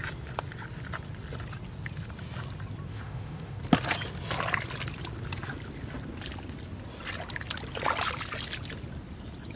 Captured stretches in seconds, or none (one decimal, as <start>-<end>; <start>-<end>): 0.0-2.9; 3.6-9.6